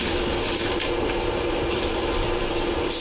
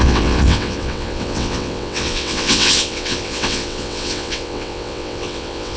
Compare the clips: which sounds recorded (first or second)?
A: first